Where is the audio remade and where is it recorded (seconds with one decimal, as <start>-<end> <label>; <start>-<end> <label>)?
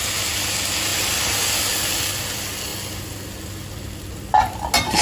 0.0-5.0 recorded